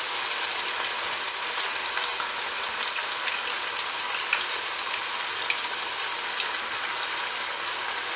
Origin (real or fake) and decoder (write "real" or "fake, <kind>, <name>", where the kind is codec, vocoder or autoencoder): real